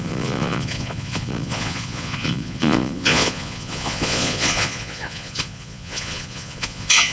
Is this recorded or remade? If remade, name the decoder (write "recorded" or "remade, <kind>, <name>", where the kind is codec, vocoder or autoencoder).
remade, vocoder, Vocos